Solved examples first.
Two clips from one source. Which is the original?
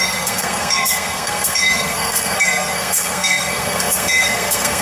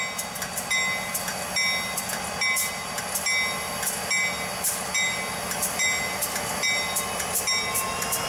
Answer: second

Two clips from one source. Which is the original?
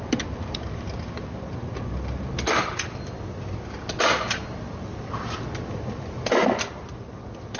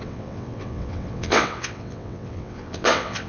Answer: first